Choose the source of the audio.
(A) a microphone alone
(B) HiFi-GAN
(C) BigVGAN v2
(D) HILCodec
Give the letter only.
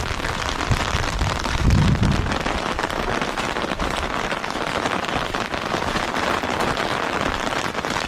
C